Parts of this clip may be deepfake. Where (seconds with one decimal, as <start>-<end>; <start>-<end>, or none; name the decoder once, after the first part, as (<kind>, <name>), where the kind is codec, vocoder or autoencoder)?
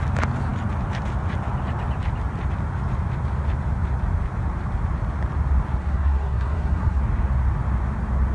5.8-7.0 (codec, SNAC)